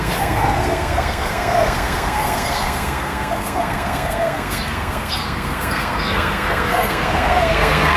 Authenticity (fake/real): fake